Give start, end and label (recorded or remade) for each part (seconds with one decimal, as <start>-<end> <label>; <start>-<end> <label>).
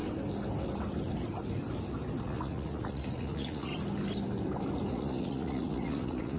0.0-2.2 recorded; 2.2-3.7 remade; 3.7-4.9 recorded; 4.9-6.4 remade